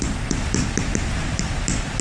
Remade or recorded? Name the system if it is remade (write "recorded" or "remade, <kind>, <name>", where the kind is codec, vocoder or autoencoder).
recorded